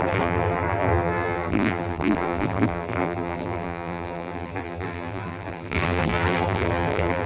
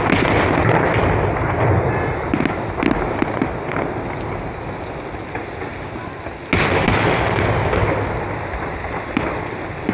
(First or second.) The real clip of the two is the second